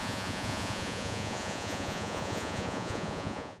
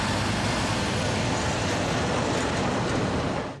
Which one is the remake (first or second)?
first